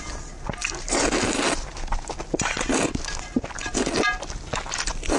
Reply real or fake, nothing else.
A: real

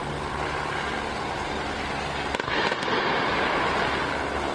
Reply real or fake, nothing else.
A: real